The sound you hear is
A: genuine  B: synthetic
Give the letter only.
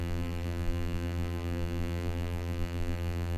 B